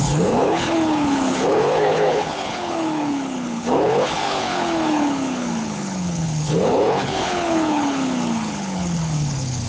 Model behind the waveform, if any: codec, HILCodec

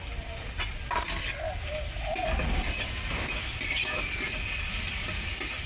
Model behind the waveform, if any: none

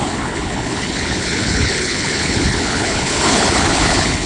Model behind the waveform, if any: codec, HILCodec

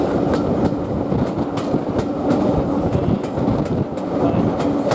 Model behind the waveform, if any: none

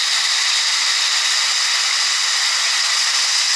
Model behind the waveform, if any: none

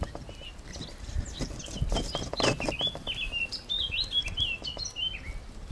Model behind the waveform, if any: none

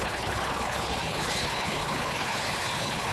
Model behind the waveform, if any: codec, HILCodec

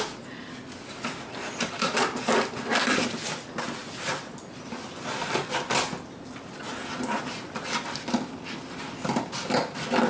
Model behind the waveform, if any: none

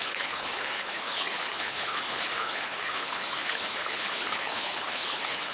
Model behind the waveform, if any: codec, HILCodec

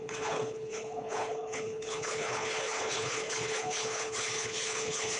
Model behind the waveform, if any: codec, HILCodec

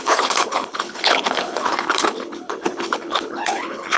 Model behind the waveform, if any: codec, HILCodec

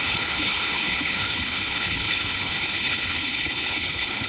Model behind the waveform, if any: codec, HILCodec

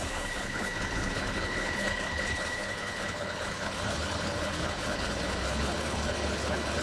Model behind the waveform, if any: codec, HILCodec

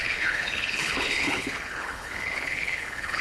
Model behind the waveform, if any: codec, HILCodec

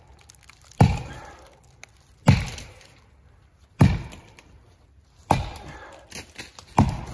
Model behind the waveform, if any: none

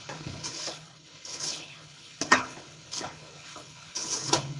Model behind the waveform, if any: codec, HILCodec